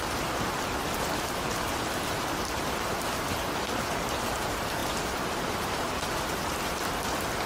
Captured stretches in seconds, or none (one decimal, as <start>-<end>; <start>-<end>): 0.0-7.5